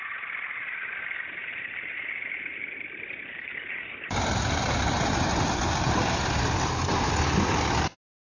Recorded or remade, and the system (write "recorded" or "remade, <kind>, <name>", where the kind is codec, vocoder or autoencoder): remade, vocoder, BigVGAN v2